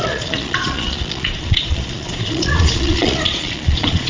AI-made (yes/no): yes